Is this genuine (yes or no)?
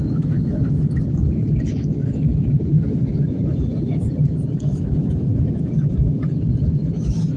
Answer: no